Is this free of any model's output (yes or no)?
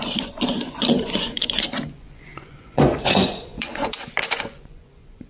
no